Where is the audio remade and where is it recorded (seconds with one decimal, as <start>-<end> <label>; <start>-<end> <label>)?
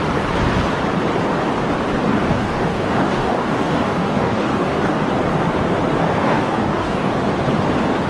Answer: 0.0-2.1 recorded; 2.1-5.0 remade; 5.0-6.0 recorded; 6.0-7.1 remade; 7.1-8.1 recorded